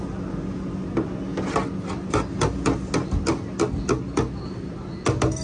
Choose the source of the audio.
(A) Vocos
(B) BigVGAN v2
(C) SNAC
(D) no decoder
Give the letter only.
D